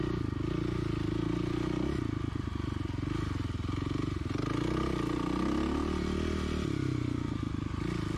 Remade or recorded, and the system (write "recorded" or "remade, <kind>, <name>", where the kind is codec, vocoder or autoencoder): recorded